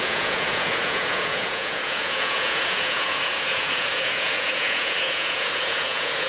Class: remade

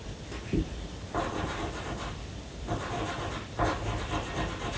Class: recorded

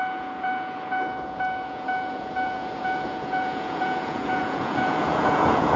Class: remade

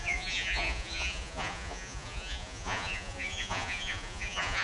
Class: remade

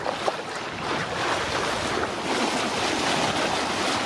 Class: recorded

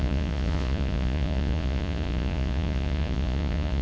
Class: remade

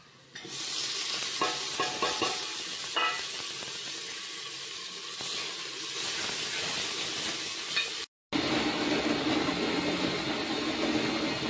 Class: recorded